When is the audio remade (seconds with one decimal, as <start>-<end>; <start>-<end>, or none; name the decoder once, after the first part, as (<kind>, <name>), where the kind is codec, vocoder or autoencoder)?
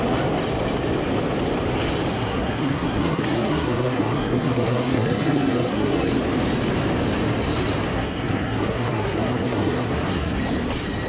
2.1-6.1 (codec, SNAC); 7.9-10.4